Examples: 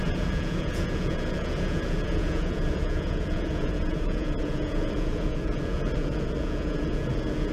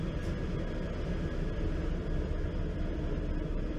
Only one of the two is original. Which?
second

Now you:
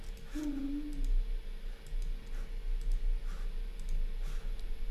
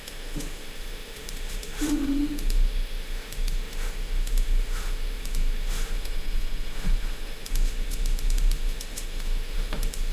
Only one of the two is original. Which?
first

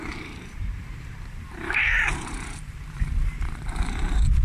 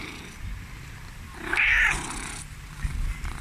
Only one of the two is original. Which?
second